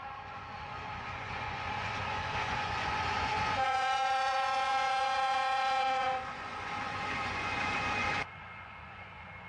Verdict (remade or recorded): remade